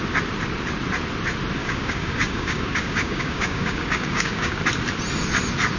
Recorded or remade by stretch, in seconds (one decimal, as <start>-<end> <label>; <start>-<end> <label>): 0.0-1.6 recorded; 1.6-4.6 remade; 4.6-5.8 recorded